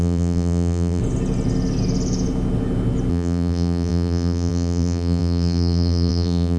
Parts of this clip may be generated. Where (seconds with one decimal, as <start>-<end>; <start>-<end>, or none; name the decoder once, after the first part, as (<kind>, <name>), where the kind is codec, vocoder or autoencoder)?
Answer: 0.0-1.0 (vocoder, BigVGAN v2); 3.1-6.6